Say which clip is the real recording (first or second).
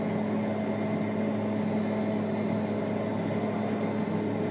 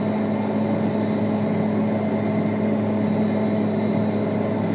first